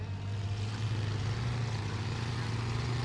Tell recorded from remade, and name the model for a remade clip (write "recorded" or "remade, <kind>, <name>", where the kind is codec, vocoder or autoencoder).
recorded